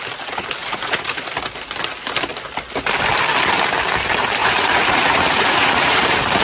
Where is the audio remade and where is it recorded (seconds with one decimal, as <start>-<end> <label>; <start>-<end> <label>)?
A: 0.0-0.6 recorded; 0.6-1.3 remade; 1.3-4.4 recorded; 4.4-6.0 remade; 6.0-6.4 recorded

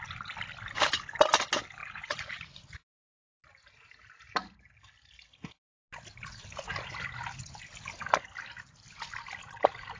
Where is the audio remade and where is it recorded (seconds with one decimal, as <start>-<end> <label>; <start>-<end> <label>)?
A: 0.0-1.8 recorded; 1.8-2.8 remade; 2.8-10.0 recorded

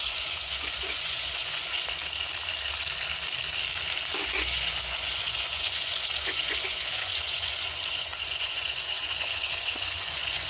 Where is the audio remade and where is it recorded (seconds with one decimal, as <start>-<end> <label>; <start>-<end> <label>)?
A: 0.0-2.0 remade; 2.0-4.2 recorded; 4.2-10.5 remade

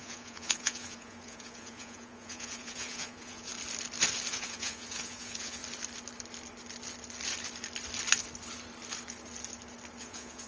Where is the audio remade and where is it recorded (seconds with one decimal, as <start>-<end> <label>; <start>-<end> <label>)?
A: 0.0-3.5 remade; 3.5-4.3 recorded; 4.3-5.6 remade; 5.6-10.0 recorded; 10.0-10.5 remade